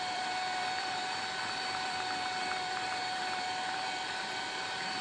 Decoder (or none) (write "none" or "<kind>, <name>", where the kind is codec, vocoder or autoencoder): vocoder, BigVGAN v2